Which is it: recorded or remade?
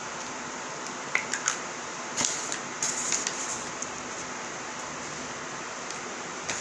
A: recorded